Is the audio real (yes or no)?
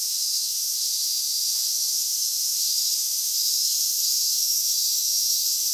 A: no